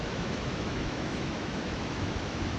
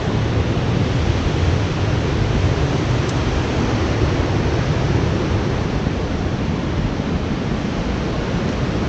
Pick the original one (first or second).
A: second